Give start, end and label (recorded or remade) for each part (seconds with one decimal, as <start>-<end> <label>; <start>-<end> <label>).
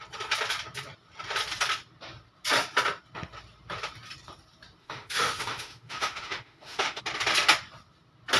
0.0-4.8 recorded; 4.8-7.0 remade; 7.0-8.4 recorded